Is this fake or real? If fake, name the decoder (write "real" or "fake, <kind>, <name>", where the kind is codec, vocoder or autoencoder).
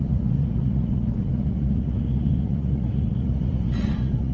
fake, vocoder, Vocos